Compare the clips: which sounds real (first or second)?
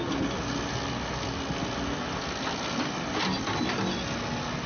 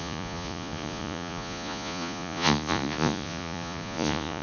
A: first